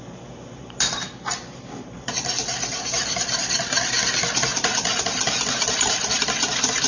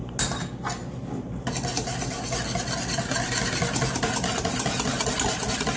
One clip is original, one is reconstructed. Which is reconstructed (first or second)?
first